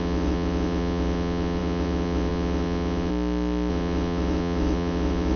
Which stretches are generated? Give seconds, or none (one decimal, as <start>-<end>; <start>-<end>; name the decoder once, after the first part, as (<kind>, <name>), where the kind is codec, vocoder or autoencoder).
0.0-3.1 (vocoder, WaveNeXt); 3.7-5.4